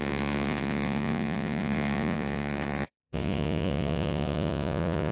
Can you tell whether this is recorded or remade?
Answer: remade